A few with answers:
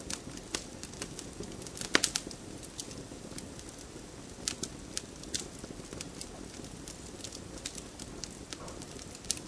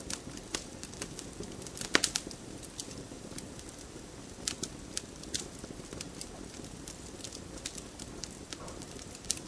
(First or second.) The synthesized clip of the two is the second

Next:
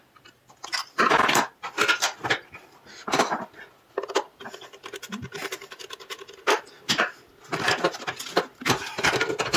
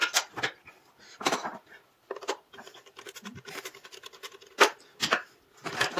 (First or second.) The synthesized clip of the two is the second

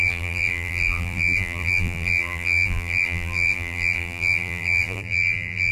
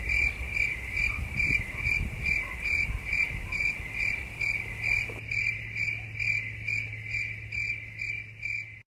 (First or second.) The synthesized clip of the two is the first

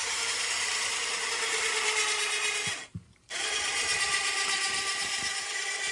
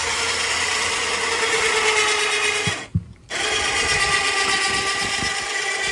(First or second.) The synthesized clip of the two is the first